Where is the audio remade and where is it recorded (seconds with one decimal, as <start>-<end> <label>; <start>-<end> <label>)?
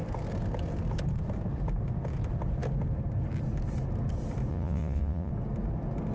0.0-4.5 recorded; 4.5-5.3 remade; 5.3-6.1 recorded